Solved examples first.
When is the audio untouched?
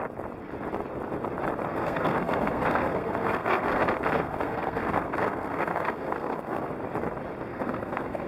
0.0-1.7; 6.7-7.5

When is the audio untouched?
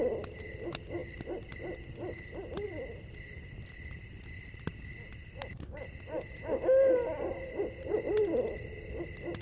0.0-9.4